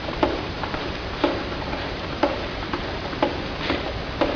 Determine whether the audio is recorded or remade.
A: remade